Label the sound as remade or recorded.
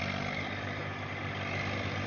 recorded